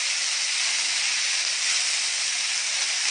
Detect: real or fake real